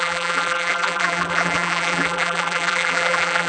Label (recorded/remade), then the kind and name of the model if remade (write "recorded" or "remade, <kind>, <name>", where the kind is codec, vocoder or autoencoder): remade, vocoder, BigVGAN v2